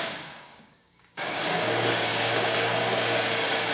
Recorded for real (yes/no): no